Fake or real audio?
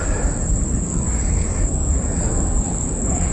fake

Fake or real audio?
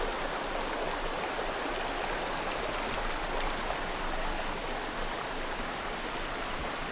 real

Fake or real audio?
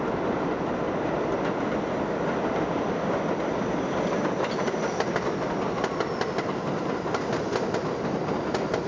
real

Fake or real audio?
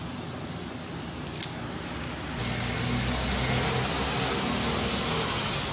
real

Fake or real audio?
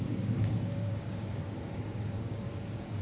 fake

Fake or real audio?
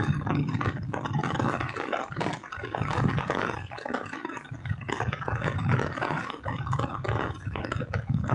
fake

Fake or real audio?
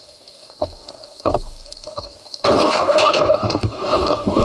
fake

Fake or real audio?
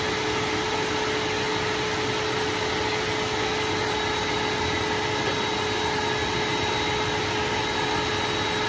real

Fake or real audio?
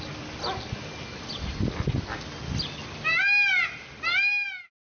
real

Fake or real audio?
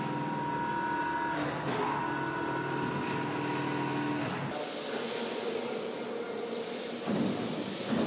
real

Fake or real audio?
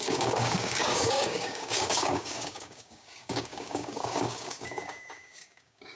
fake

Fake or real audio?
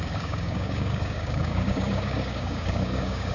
fake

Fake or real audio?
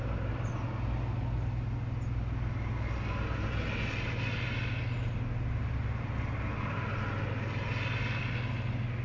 real